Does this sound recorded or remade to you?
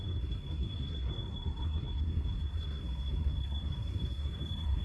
remade